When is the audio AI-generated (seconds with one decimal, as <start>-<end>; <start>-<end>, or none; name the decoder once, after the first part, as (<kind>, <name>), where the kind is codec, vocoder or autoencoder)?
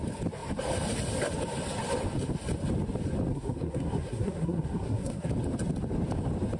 3.3-5.3 (codec, SNAC)